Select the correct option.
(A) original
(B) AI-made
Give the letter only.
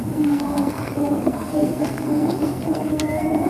B